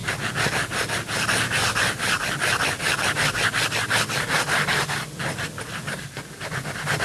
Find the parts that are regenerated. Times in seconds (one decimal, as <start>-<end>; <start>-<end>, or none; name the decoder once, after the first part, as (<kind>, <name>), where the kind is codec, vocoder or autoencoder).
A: none